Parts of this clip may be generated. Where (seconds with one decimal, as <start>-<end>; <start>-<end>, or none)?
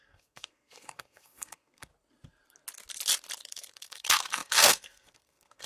0.0-1.9; 3.5-5.7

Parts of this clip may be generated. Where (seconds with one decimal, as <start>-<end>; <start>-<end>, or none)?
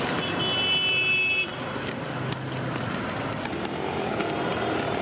none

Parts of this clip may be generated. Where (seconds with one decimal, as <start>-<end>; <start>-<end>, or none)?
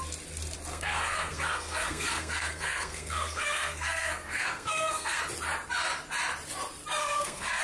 0.7-5.2; 7.0-7.6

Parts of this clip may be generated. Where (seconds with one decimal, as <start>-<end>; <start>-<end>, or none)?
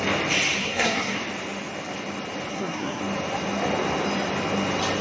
0.6-1.2; 2.5-3.0